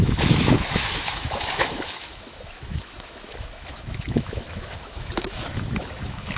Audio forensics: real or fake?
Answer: fake